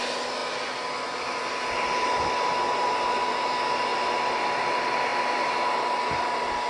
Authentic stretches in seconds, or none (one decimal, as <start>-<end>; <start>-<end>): 0.0-6.7